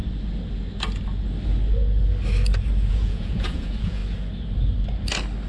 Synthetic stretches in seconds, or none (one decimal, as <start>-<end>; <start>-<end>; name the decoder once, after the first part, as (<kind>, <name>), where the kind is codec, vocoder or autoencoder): 2.9-4.0 (vocoder, Vocos)